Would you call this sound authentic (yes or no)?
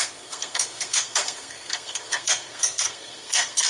no